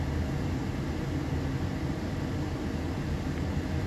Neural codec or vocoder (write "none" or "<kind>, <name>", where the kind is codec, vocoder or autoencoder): none